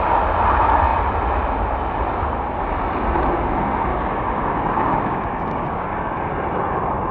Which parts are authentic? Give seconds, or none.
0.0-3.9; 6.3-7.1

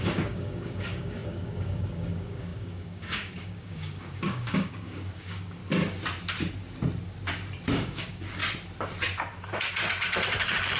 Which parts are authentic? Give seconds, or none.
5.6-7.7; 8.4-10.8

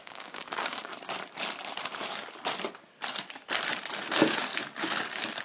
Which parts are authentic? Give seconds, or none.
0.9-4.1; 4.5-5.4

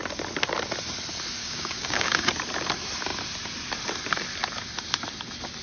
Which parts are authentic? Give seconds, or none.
0.0-1.4; 2.3-5.6